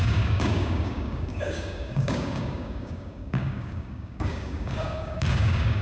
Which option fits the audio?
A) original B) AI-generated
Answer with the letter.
B